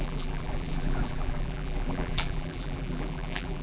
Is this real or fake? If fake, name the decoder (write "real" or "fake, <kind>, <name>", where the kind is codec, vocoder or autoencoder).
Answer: fake, vocoder, BigVGAN v2